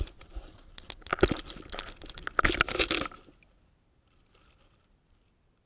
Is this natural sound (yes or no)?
yes